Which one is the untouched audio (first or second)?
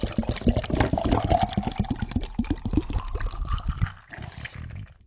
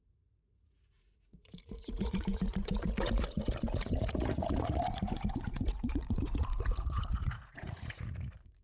first